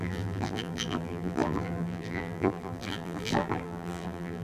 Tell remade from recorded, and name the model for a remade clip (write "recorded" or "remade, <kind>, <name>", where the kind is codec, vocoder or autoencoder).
remade, vocoder, BigVGAN v2